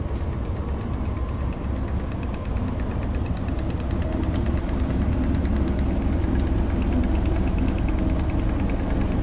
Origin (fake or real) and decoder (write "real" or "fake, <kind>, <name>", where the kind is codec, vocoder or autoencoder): real